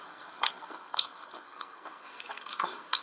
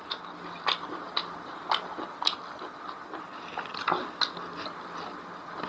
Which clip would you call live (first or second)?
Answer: second